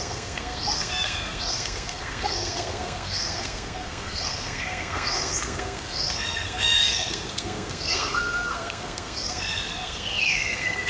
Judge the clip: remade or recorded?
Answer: remade